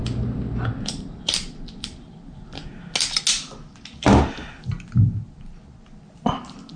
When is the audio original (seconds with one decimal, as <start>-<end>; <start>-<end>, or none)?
0.0-6.8